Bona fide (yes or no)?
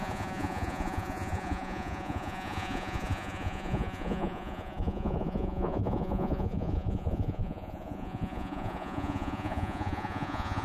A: no